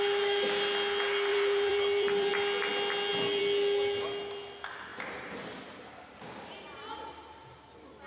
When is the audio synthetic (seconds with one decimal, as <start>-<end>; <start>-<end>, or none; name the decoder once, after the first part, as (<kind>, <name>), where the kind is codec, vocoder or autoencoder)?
1.3-2.3 (vocoder, BigVGAN v2); 4.9-6.5